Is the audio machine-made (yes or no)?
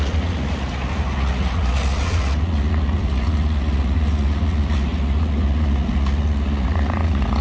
yes